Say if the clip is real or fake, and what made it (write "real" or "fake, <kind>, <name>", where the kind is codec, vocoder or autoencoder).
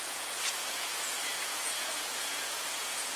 fake, vocoder, Vocos